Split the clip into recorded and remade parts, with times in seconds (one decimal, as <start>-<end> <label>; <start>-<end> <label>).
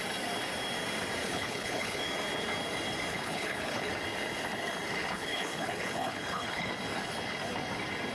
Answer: 0.0-1.2 recorded; 1.2-2.0 remade; 2.0-3.1 recorded; 3.1-3.9 remade; 3.9-5.0 recorded; 5.0-6.7 remade; 6.7-8.1 recorded